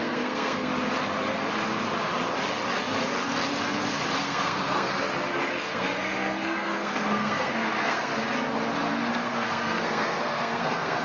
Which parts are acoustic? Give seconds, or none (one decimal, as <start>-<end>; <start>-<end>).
0.7-4.2; 4.9-5.5; 8.1-9.1